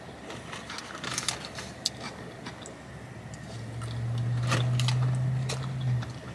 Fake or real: real